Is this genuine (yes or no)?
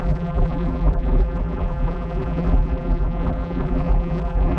no